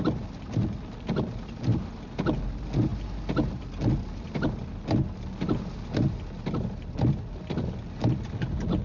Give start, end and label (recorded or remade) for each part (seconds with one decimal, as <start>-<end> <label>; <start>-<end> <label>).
0.0-8.8 recorded